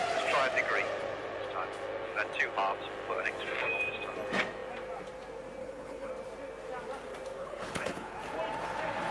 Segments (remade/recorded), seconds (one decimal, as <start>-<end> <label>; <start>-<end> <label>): 0.0-5.6 recorded; 5.6-6.1 remade; 6.1-7.4 recorded; 7.4-8.2 remade; 8.2-9.1 recorded